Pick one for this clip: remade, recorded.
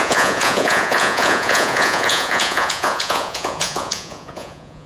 remade